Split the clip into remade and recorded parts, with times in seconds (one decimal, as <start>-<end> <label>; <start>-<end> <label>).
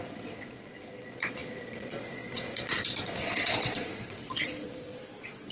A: 0.0-5.5 remade